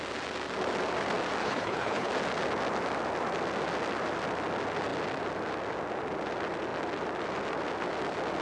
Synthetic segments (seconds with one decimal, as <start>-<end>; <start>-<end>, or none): 1.4-2.1